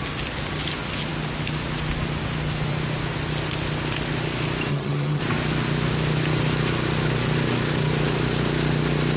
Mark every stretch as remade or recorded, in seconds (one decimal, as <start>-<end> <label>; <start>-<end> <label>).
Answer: 0.0-4.7 recorded; 4.7-5.2 remade; 5.2-9.2 recorded